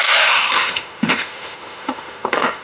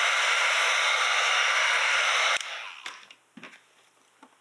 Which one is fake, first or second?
first